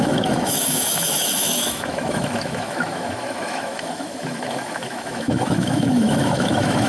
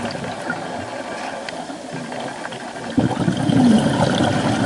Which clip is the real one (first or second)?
second